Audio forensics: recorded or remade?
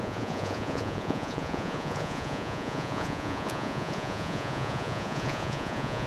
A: remade